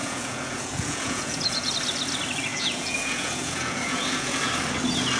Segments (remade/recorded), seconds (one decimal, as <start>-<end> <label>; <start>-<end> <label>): 0.0-1.7 remade; 1.7-2.5 recorded; 2.5-4.5 remade; 4.5-5.2 recorded